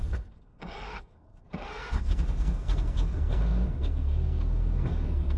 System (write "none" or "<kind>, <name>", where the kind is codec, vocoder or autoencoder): codec, SNAC